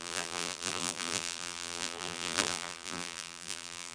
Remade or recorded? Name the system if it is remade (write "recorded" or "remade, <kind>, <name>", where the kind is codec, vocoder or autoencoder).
remade, vocoder, BigVGAN v2